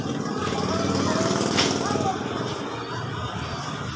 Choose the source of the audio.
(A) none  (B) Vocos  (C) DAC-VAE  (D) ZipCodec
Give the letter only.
A